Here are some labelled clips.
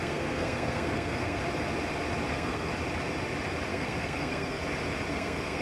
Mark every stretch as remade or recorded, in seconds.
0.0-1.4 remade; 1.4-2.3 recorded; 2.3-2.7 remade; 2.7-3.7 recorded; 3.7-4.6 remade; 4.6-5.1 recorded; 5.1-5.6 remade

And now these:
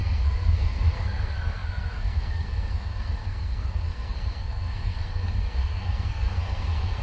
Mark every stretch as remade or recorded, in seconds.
0.0-7.0 remade

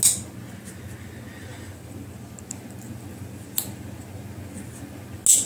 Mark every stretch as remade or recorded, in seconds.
0.0-5.4 recorded

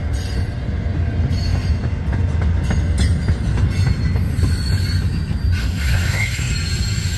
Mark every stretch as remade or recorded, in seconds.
0.0-5.6 recorded; 5.6-6.5 remade; 6.5-7.2 recorded

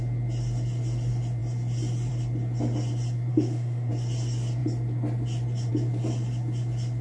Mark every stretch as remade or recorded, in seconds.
0.0-3.3 recorded; 3.3-3.9 remade; 3.9-7.0 recorded

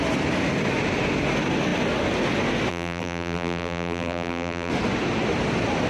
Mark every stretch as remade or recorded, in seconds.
0.0-2.7 recorded; 2.7-4.7 remade; 4.7-5.9 recorded

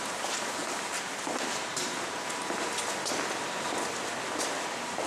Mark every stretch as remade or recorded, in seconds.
0.0-5.1 recorded

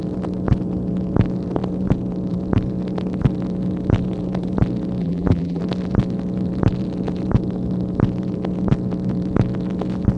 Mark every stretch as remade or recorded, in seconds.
0.0-5.0 recorded; 5.0-5.6 remade; 5.6-10.2 recorded